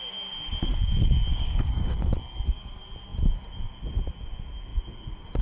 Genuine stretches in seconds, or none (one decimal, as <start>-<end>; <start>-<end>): 0.0-1.3; 2.1-5.4